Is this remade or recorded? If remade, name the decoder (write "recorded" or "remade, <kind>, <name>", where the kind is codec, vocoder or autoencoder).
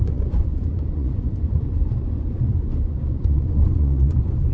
remade, vocoder, Vocos